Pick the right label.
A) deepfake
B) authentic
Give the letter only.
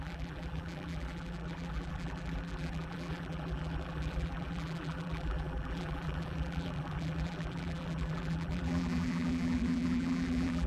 A